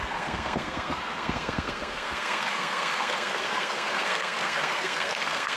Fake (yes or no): yes